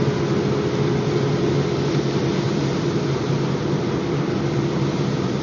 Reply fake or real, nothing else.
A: real